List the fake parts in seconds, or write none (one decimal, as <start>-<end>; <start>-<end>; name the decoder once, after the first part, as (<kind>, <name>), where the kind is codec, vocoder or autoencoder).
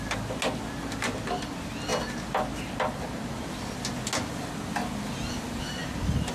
none